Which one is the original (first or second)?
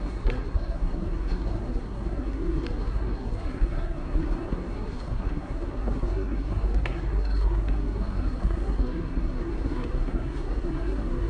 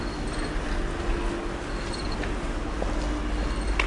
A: second